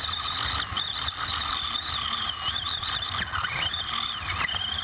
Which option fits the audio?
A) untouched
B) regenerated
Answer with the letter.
A